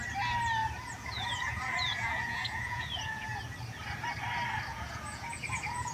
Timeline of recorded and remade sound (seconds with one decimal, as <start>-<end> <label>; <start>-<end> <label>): 0.0-0.6 recorded; 0.6-3.4 remade; 3.4-4.7 recorded; 4.7-5.9 remade